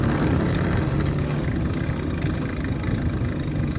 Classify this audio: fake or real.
real